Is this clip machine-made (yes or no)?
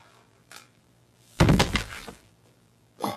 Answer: yes